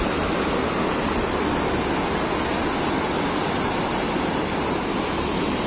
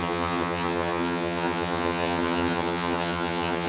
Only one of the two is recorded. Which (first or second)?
first